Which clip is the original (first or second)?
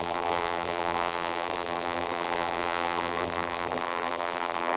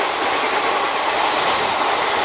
second